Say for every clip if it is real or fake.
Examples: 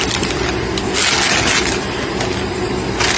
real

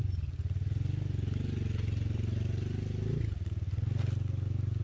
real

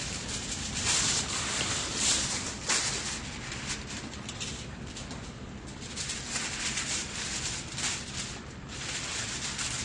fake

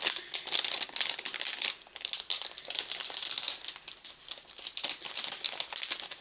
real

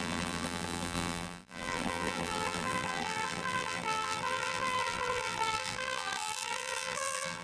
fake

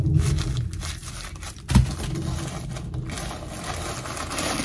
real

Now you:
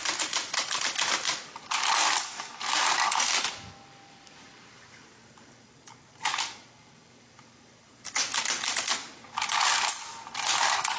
real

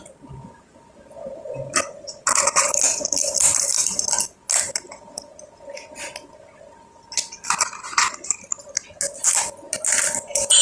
real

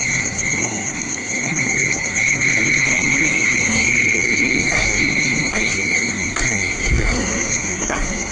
fake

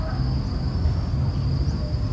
real